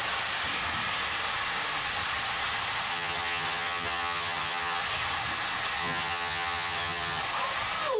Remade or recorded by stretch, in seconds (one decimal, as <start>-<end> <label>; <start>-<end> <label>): 0.0-2.9 recorded; 2.9-4.8 remade; 4.8-5.8 recorded; 5.8-7.2 remade; 7.2-8.0 recorded